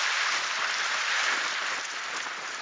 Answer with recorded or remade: recorded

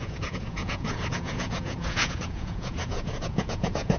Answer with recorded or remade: remade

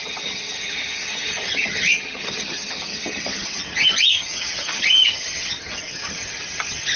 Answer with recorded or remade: remade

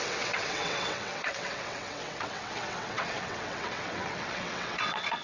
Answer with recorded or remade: remade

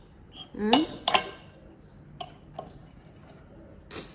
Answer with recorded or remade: recorded